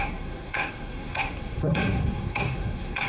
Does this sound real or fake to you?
fake